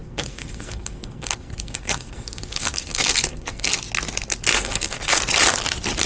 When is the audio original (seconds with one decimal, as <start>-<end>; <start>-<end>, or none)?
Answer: 3.7-4.5; 5.2-6.1